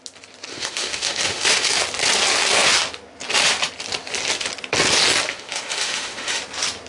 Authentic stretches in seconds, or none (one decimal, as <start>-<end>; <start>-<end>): 0.0-0.5; 1.8-5.3; 6.4-6.9